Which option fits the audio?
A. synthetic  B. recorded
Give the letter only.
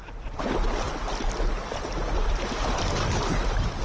B